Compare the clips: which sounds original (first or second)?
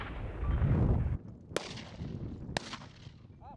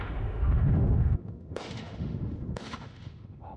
first